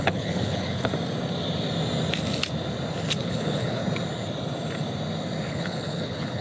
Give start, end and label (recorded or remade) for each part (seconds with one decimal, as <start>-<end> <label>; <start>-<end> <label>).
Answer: 0.0-0.9 remade; 0.9-3.1 recorded; 3.1-3.8 remade; 3.8-5.5 recorded; 5.5-6.4 remade